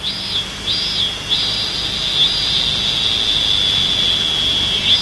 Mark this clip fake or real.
real